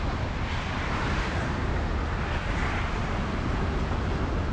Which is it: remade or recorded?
recorded